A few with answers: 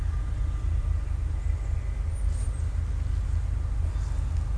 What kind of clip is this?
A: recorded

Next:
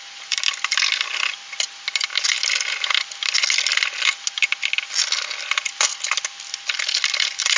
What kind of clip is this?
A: recorded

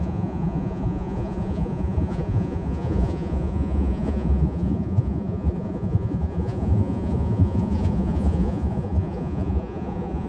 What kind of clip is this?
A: remade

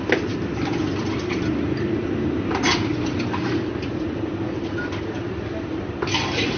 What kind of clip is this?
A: recorded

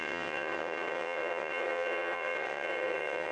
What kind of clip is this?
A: remade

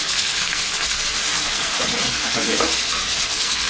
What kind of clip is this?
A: remade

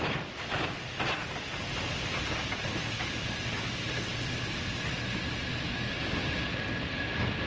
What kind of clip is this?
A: recorded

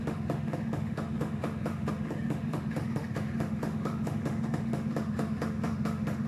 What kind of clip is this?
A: remade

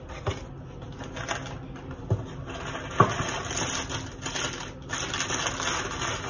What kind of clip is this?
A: recorded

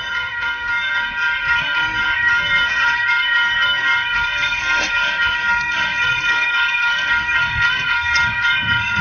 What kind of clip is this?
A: remade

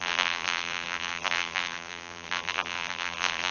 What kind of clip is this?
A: remade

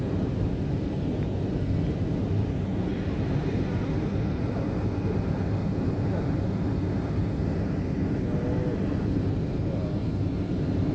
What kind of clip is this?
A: recorded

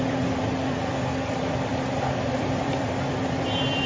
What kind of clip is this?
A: remade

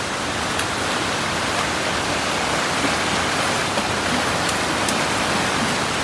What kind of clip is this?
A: recorded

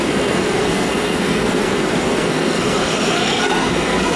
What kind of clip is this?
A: remade